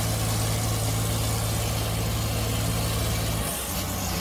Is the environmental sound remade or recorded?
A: recorded